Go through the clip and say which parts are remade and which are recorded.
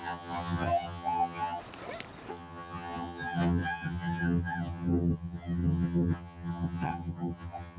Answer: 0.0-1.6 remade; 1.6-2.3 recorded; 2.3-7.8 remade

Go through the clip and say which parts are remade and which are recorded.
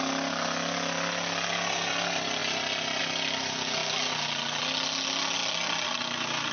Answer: 0.0-6.5 recorded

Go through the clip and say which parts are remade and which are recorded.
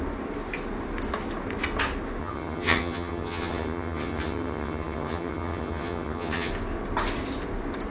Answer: 0.0-2.2 recorded; 2.2-6.5 remade; 6.5-7.9 recorded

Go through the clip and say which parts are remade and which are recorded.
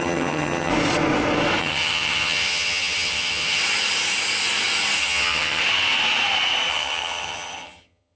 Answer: 0.0-0.7 remade; 0.7-1.6 recorded; 1.6-3.6 remade; 3.6-5.0 recorded; 5.0-5.6 remade; 5.6-6.7 recorded; 6.7-8.2 remade